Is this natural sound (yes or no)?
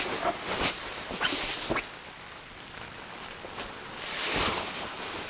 yes